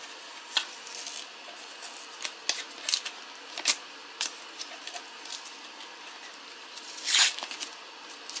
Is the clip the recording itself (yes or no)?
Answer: yes